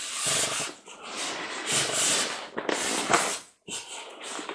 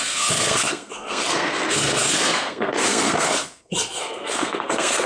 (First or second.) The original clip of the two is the first